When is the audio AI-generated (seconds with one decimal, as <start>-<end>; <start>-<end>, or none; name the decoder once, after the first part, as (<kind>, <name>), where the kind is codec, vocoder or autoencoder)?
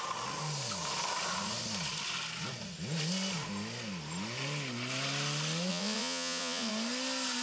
5.7-6.7 (vocoder, Vocos)